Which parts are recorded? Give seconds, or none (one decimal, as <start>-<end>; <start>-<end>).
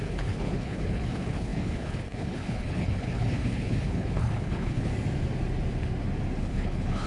4.9-6.4